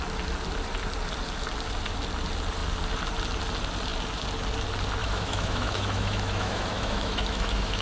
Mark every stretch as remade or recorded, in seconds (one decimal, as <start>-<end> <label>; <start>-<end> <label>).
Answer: 0.0-5.0 recorded; 5.0-7.8 remade